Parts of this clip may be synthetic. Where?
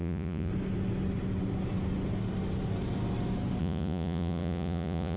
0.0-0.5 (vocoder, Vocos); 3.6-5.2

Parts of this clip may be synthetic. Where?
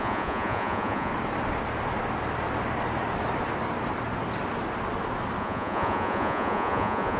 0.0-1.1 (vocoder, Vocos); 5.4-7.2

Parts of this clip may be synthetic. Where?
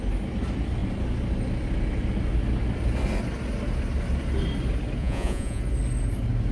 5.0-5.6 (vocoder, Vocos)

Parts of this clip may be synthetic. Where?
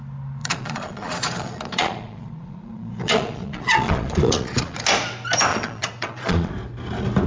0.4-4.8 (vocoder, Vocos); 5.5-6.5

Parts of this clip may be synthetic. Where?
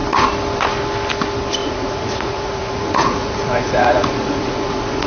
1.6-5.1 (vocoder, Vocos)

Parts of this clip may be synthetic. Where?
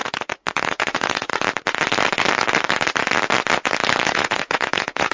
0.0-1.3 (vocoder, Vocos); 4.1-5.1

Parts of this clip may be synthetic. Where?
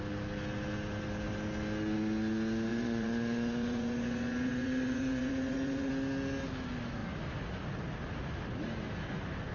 2.7-5.9 (vocoder, Vocos)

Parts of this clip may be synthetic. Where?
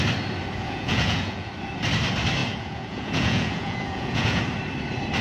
0.6-1.5 (vocoder, Vocos); 2.4-4.4